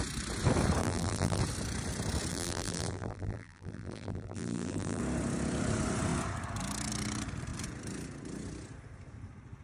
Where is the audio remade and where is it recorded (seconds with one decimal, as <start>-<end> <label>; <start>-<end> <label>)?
0.0-0.8 recorded; 0.8-1.4 remade; 1.4-2.3 recorded; 2.3-5.0 remade; 5.0-9.6 recorded